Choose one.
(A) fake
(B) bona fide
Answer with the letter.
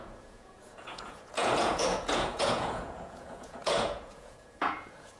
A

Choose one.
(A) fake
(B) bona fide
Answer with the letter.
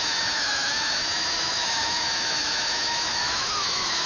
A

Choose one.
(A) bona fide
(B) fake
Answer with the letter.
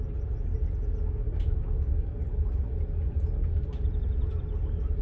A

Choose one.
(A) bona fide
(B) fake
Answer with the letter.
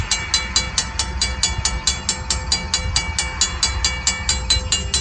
A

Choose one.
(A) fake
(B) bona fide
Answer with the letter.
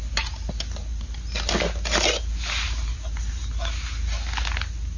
B